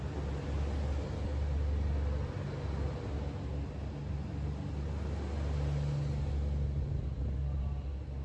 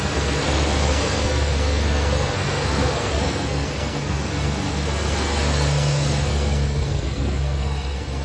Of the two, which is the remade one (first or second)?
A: second